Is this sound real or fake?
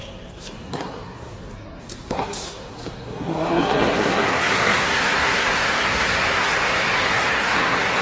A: fake